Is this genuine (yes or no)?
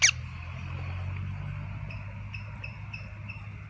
yes